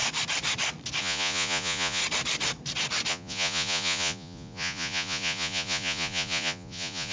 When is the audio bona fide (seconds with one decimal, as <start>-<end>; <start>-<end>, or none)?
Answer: 0.0-1.0; 2.0-3.1